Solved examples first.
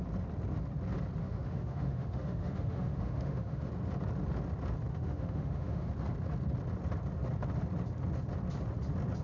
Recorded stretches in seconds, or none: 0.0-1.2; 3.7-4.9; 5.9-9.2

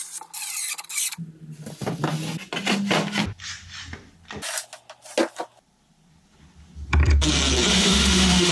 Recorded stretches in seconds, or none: 0.0-7.7

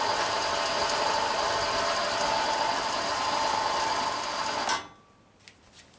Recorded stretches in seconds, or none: 0.0-6.0

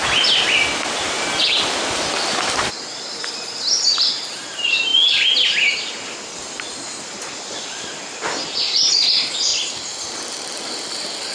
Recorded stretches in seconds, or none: 0.0-9.5; 10.7-11.3

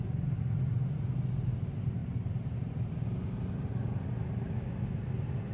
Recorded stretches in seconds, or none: 0.0-5.5

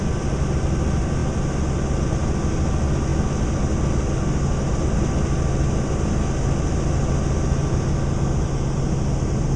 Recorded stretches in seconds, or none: 0.0-9.6

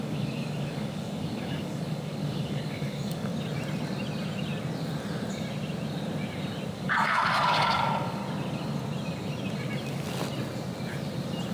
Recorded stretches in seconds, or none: 3.3-6.7; 8.2-11.5

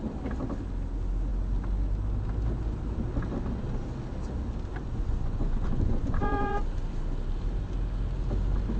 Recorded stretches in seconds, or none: 0.0-4.8; 6.6-8.8